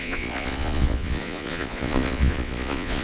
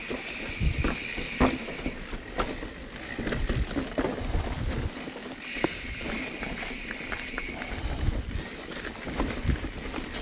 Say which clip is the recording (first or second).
second